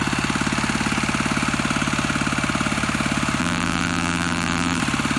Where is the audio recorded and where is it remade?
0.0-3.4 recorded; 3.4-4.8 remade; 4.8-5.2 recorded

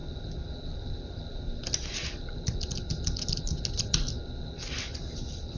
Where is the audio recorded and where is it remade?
0.0-5.6 recorded

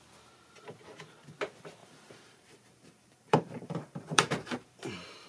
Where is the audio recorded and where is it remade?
0.0-1.8 recorded; 1.8-5.3 remade

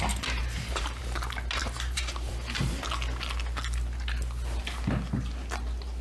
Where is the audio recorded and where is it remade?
0.0-0.4 recorded; 0.4-1.0 remade; 1.0-1.6 recorded; 1.6-2.7 remade; 2.7-6.0 recorded